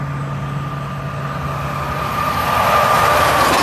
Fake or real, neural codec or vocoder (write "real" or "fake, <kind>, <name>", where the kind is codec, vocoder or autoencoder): real